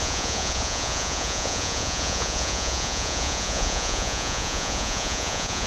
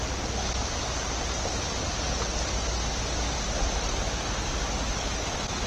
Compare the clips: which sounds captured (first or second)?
second